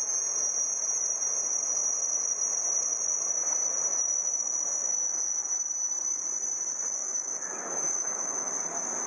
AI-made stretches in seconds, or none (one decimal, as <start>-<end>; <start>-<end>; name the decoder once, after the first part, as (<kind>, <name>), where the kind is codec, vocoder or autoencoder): 7.0-8.5 (autoencoder, DAC-VAE)